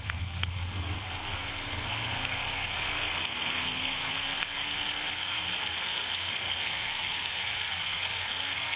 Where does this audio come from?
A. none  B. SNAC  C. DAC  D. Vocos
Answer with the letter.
B